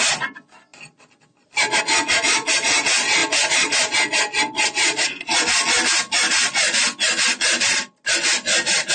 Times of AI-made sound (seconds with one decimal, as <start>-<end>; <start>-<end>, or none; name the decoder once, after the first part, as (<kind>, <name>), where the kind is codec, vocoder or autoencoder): none